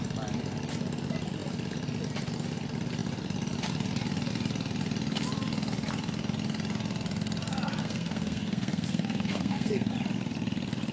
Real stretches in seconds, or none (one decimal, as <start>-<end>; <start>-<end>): 0.0-7.8; 9.9-10.9